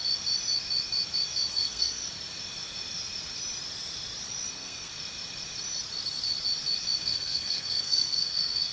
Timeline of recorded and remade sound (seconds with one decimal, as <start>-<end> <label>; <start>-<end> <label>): 0.0-1.5 recorded; 1.5-2.0 remade; 2.0-4.5 recorded; 4.5-4.9 remade; 4.9-7.0 recorded; 7.0-8.7 remade